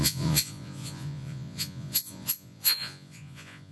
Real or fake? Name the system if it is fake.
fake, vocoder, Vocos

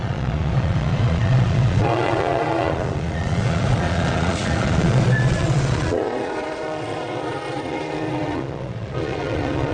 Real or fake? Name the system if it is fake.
fake, vocoder, Vocos